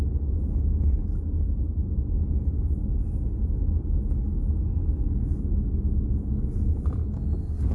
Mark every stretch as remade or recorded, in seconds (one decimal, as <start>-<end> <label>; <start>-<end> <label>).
0.0-7.7 recorded